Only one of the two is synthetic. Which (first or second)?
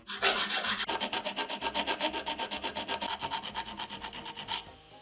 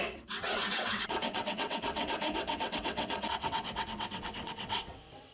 second